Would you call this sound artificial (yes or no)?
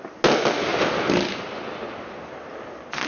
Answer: no